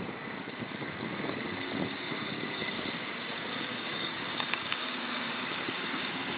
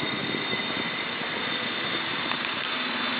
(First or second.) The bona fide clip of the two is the second